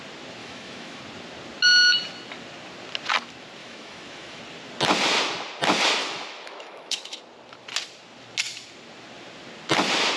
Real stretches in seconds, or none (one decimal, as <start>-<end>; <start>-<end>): 0.0-0.4; 1.0-3.6; 4.4-6.0; 7.2-10.2